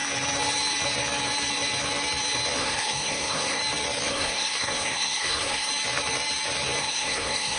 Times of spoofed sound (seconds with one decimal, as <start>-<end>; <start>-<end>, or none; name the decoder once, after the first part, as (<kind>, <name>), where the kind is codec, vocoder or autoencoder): 2.6-3.6 (codec, SNAC); 4.1-5.7; 6.8-7.6